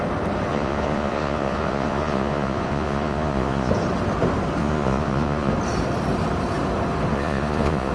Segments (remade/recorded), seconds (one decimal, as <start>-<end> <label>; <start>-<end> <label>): 0.0-0.5 recorded; 0.5-3.7 remade; 3.7-4.6 recorded; 4.6-5.5 remade; 5.5-7.1 recorded; 7.1-7.9 remade